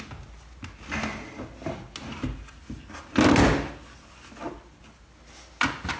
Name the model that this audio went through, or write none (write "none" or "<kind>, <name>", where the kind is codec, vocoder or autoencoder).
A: none